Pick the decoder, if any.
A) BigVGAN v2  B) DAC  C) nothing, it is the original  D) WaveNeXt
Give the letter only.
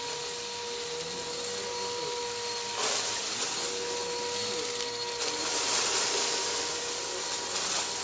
C